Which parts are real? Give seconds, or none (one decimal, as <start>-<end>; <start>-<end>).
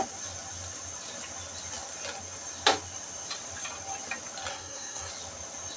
0.0-4.5; 5.1-5.8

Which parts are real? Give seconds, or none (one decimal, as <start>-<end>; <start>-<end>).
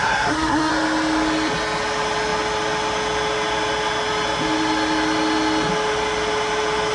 0.7-6.9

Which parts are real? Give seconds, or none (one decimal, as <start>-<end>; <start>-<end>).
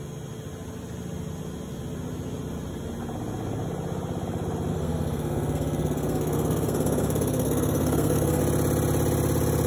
0.0-4.7; 8.4-9.7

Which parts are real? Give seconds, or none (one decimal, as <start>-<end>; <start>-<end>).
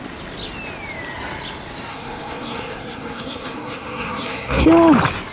0.0-1.9; 4.6-5.3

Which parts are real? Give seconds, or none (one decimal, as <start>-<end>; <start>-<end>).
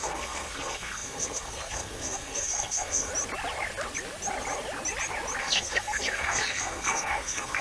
3.1-5.4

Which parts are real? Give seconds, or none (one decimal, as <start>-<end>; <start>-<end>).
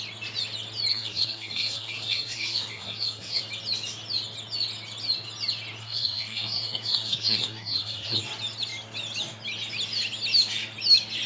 0.0-0.9; 3.4-5.8; 8.2-11.3